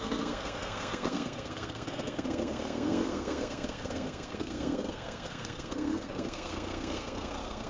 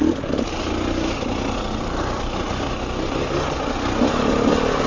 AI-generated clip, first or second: first